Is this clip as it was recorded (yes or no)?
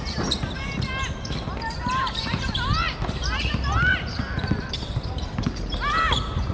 no